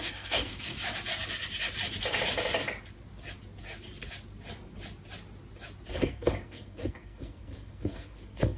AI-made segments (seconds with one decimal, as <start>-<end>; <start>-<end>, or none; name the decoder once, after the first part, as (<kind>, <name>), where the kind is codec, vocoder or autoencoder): 0.0-0.7 (codec, SNAC); 5.9-8.6